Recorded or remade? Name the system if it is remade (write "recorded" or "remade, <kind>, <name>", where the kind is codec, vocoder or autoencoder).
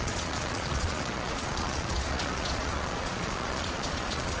remade, vocoder, Vocos